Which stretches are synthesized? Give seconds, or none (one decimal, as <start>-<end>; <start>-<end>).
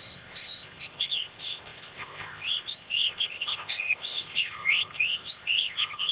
0.0-6.1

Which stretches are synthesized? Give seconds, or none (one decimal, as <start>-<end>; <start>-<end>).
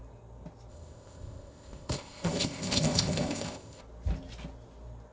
0.7-3.8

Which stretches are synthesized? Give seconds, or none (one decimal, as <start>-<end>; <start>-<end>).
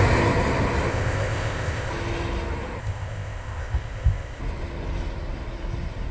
0.9-1.9; 2.8-4.4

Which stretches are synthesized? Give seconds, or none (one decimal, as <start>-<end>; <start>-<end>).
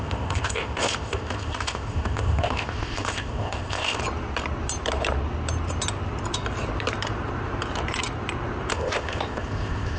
0.0-4.0; 8.7-10.0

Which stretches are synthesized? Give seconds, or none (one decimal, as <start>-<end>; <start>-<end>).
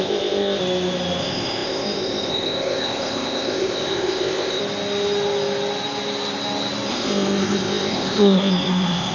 0.0-0.6; 1.2-4.6; 6.9-9.1